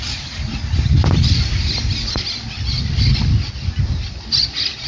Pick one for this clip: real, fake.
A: real